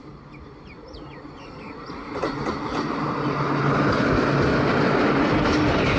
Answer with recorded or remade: recorded